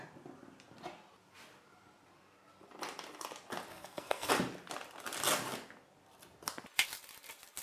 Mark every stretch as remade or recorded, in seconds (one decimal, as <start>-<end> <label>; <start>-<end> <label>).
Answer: 0.0-3.7 recorded; 3.7-4.3 remade; 4.3-7.6 recorded